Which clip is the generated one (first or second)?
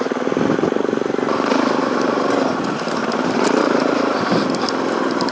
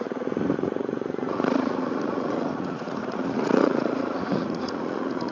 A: second